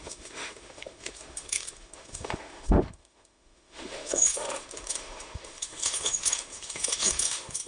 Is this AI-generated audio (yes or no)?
yes